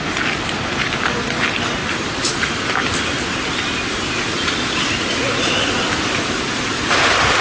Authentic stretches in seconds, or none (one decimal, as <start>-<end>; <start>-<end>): 0.0-7.4